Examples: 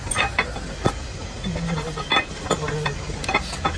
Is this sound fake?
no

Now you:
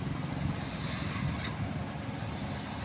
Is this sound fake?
no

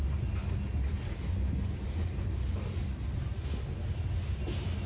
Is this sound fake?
no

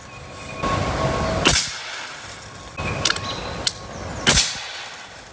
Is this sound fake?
no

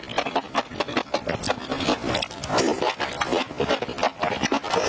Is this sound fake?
no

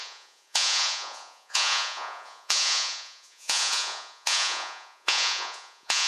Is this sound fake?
yes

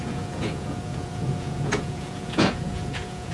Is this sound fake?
yes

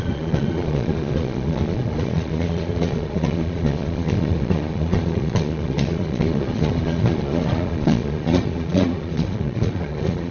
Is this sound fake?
yes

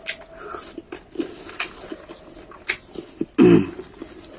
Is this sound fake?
no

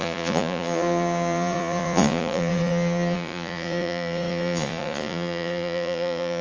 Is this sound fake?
yes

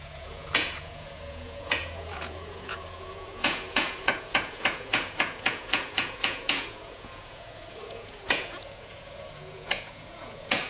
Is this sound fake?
yes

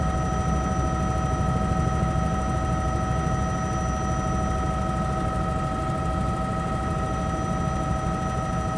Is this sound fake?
no